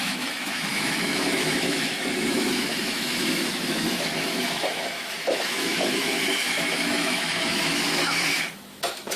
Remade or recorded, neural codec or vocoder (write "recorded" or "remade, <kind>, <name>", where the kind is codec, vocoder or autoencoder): remade, autoencoder, DAC-VAE